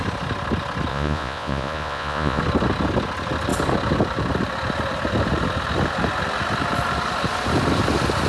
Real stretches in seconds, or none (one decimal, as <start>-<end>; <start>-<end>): 0.0-0.9; 2.4-8.3